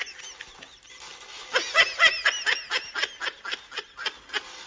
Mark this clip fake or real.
real